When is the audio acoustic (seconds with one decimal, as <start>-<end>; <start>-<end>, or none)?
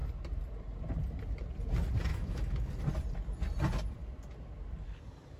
0.0-2.1; 2.7-5.4